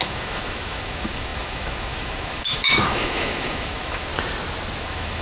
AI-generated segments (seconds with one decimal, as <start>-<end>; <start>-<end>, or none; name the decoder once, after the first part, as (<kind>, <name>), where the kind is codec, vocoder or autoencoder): 0.0-4.1 (autoencoder, DAC-VAE); 4.8-5.2